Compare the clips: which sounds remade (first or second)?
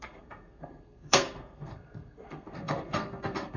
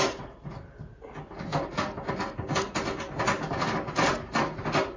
first